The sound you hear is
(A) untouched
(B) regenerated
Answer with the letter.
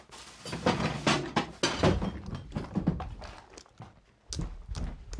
A